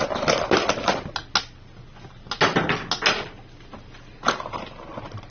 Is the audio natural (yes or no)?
yes